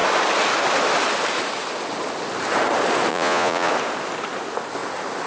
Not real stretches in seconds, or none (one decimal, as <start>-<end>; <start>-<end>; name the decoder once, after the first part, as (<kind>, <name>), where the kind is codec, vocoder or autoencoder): 3.1-3.7 (vocoder, Vocos)